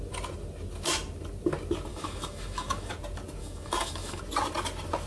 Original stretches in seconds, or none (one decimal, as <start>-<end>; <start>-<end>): 0.0-1.9; 2.9-3.4; 4.2-5.1